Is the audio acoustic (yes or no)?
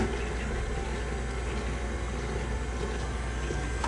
yes